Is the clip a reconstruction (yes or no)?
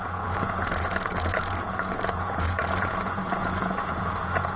yes